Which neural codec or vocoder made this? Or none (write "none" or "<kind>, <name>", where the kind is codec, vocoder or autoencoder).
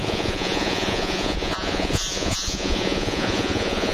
vocoder, Vocos